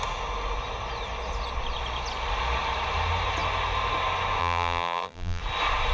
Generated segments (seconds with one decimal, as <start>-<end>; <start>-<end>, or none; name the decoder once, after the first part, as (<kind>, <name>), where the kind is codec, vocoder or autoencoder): 4.4-5.4 (vocoder, BigVGAN v2)